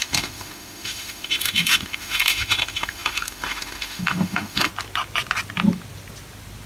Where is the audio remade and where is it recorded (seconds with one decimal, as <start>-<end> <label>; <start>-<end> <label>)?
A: 0.0-4.7 remade; 4.7-6.7 recorded